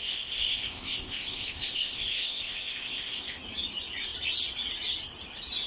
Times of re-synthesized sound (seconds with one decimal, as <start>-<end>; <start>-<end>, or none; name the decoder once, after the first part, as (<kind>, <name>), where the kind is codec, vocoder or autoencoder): 0.0-3.4 (codec, ZipCodec)